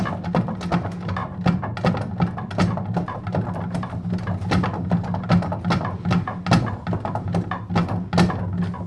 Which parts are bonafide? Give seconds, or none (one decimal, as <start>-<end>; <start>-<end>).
0.0-8.9